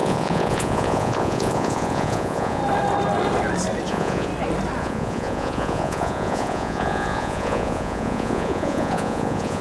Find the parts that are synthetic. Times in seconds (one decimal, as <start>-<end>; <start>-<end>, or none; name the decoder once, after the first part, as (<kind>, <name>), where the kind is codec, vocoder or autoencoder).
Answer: 0.0-2.6 (vocoder, Vocos); 3.9-4.3; 4.8-9.6